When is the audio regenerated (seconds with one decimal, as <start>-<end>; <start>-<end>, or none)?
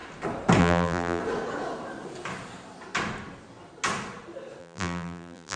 0.6-1.2; 4.6-5.6